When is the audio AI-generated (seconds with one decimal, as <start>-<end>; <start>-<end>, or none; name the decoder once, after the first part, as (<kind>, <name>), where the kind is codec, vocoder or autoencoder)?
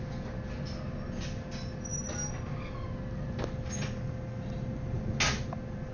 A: none